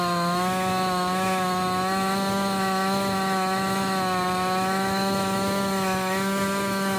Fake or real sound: fake